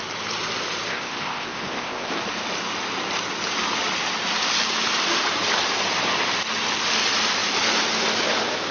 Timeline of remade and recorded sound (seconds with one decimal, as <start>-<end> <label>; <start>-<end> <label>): 0.0-0.9 recorded; 0.9-2.1 remade; 2.1-8.7 recorded